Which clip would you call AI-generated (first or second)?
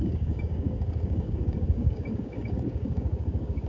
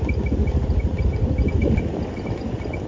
first